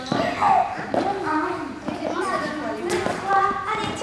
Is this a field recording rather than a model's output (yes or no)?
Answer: yes